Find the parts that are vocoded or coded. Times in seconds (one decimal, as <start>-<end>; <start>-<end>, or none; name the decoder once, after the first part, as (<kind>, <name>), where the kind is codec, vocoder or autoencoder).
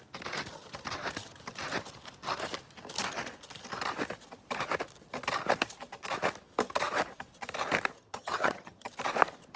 8.0-8.9 (vocoder, HiFi-GAN)